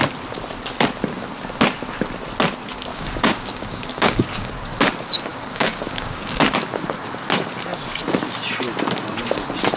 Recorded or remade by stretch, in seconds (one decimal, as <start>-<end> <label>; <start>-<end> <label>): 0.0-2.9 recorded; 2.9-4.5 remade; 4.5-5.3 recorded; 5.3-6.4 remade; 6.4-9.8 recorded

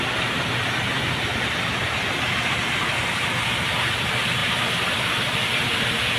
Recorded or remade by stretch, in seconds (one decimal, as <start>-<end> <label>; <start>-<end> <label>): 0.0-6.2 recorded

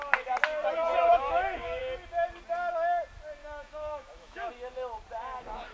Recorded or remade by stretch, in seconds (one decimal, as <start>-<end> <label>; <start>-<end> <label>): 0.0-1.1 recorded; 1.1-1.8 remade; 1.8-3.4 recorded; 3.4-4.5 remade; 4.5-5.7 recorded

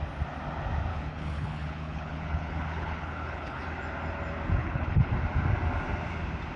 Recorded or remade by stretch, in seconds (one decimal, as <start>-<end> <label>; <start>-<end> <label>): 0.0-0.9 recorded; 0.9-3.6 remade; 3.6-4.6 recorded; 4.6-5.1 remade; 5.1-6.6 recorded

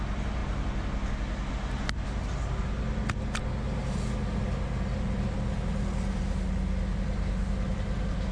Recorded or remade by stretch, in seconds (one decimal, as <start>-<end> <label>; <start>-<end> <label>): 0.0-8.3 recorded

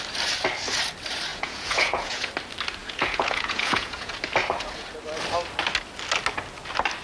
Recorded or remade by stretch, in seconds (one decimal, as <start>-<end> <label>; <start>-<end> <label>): 0.0-1.3 recorded; 1.3-2.3 remade; 2.3-2.8 recorded; 2.8-4.1 remade; 4.1-7.0 recorded